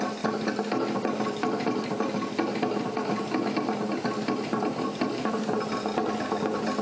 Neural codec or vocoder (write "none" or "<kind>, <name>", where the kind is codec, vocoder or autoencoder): none